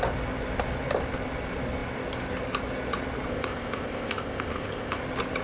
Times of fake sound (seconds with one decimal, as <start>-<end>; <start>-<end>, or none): 3.3-5.0

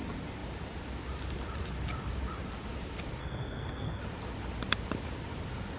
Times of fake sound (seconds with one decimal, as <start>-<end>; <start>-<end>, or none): 3.2-4.0

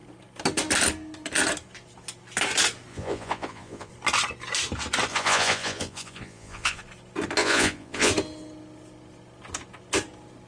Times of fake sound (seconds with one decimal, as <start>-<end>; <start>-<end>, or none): 2.9-3.9; 5.1-6.8; 7.4-8.1

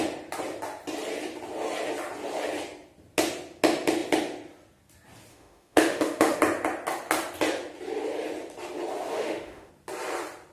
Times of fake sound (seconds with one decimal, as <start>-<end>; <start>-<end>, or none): 5.3-6.4; 9.1-9.7

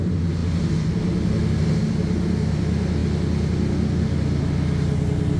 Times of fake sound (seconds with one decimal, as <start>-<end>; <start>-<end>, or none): none